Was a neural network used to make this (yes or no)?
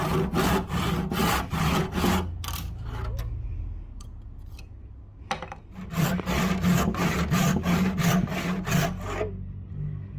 no